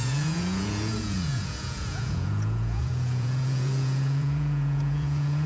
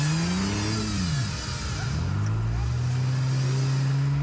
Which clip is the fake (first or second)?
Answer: first